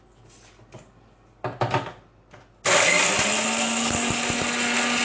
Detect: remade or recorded recorded